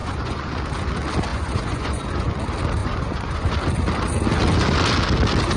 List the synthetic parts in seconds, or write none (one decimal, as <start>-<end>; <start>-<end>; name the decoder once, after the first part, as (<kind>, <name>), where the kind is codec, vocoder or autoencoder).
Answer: 0.0-0.6 (vocoder, Vocos); 1.3-2.4; 2.8-3.5